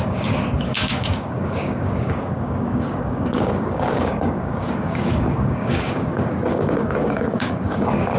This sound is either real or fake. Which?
fake